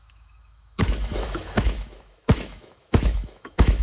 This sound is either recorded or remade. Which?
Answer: remade